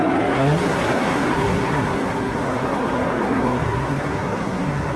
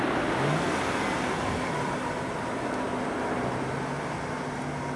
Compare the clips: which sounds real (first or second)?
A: second